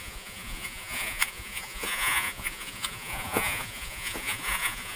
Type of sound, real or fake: fake